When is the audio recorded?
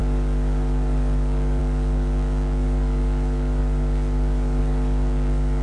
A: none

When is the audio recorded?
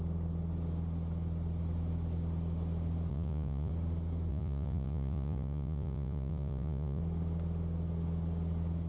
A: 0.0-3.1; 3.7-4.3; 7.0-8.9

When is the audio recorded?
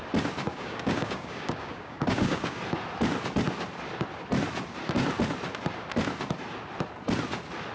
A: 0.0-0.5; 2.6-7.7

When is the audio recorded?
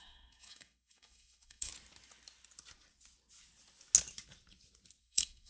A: 1.7-5.0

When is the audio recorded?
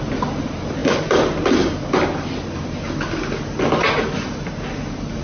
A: 0.0-5.2